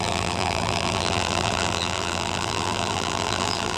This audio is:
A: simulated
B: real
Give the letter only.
A